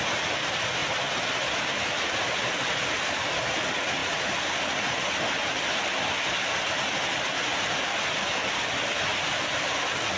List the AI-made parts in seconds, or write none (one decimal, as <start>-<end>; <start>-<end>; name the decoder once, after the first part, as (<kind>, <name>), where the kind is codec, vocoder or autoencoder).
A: none